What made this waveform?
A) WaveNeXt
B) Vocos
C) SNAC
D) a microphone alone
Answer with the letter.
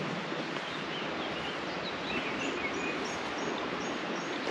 D